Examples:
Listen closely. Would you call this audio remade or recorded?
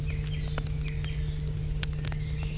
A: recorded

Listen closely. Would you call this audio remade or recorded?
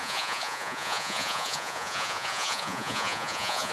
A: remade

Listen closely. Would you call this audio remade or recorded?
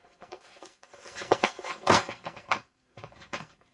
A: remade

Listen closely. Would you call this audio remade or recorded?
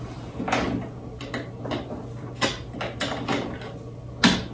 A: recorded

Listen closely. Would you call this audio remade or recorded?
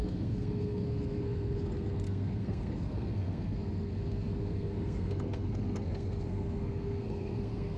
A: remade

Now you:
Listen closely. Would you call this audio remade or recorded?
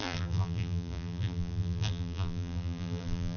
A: remade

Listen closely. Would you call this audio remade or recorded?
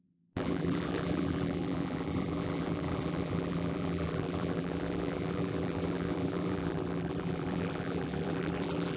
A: remade